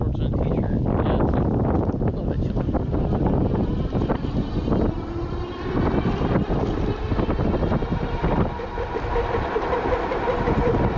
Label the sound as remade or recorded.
recorded